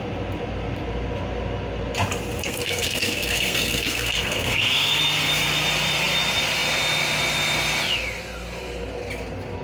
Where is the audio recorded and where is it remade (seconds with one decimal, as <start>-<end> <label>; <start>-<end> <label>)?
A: 0.0-2.4 recorded; 2.4-5.0 remade; 5.0-9.6 recorded